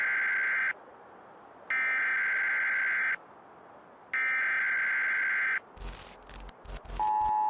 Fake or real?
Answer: real